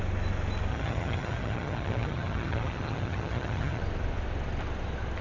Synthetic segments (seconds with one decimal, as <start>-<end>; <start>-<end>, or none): 0.7-3.8